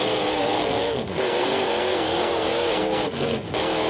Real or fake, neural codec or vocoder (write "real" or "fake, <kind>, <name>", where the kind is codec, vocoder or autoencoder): fake, codec, SNAC